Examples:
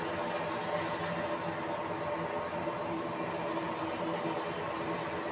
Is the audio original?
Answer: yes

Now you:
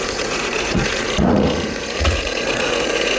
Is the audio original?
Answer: no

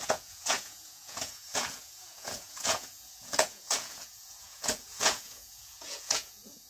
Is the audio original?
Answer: no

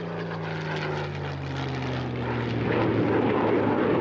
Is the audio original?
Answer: yes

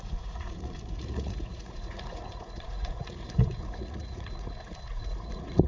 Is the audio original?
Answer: no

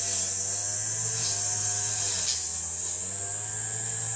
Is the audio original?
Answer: yes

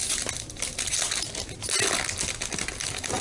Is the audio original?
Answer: yes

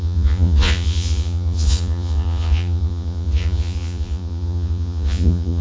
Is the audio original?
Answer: no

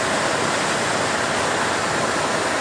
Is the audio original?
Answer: yes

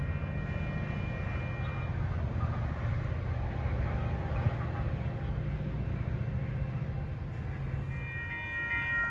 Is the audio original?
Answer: yes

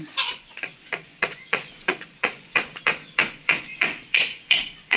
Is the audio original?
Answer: no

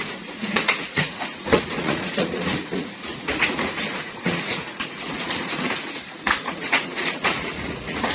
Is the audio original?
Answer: no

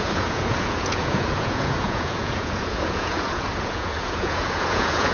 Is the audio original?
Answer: no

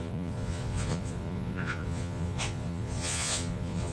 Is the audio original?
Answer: no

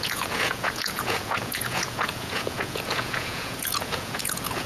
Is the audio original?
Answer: no